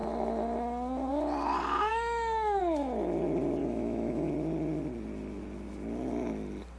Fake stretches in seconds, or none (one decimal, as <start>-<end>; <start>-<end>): 1.9-2.6; 3.6-4.3